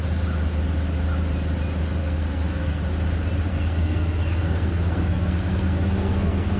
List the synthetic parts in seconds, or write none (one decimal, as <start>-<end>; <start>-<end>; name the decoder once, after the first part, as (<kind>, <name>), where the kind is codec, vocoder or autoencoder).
2.0-2.8 (codec, SNAC); 3.5-6.6